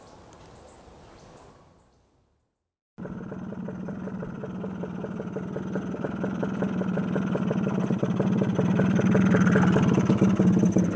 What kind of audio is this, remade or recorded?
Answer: recorded